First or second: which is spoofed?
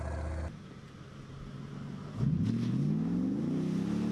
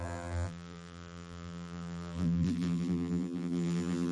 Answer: second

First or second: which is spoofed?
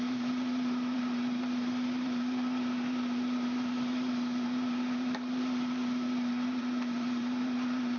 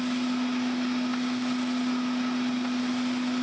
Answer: first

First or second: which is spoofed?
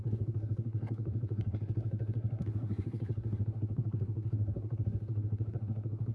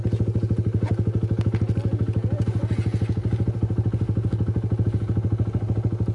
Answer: first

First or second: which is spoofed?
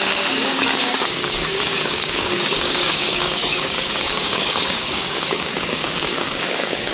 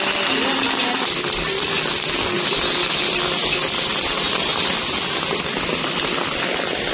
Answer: first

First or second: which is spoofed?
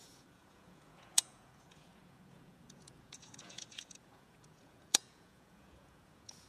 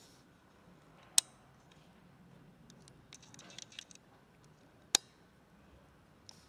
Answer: first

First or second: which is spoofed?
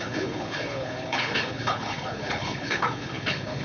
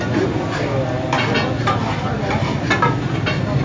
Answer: first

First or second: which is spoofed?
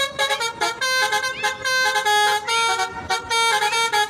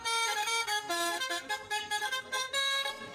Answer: second